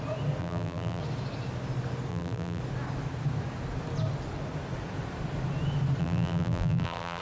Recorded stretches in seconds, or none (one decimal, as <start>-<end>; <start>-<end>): 0.0-0.4; 1.0-2.1; 2.6-6.0